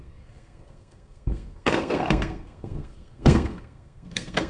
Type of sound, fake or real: fake